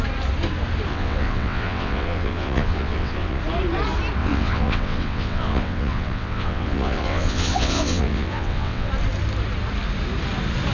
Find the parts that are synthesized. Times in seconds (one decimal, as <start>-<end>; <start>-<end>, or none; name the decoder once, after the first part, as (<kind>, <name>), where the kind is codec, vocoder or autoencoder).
0.9-3.4 (vocoder, WaveNeXt); 4.2-8.9